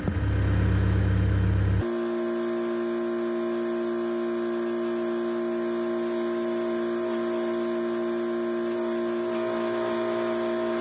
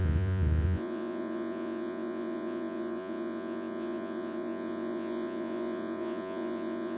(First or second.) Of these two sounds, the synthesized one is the second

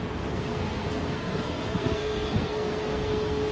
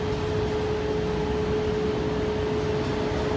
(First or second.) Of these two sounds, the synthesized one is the first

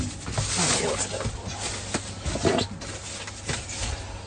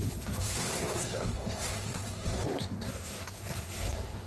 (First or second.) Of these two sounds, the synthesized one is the second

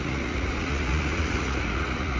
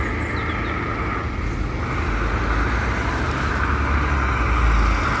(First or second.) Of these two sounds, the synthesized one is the first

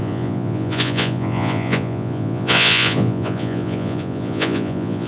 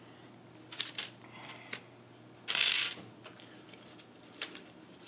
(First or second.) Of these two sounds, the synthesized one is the first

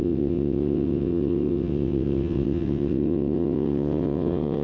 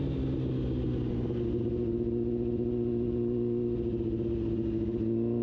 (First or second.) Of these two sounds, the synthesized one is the first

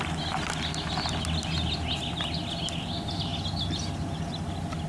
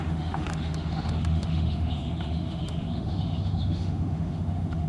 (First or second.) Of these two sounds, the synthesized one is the second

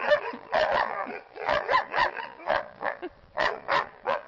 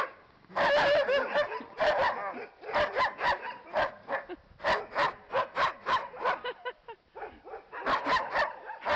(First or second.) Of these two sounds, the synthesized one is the first